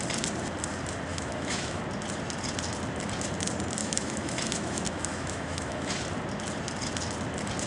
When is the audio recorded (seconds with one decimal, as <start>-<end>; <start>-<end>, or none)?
0.0-1.1; 1.8-3.8; 5.9-7.7